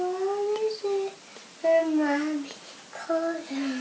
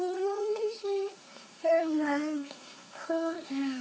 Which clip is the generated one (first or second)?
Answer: second